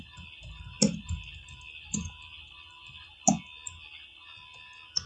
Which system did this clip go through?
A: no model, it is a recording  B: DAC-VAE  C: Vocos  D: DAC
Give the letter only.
A